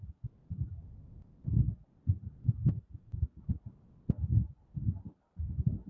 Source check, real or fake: real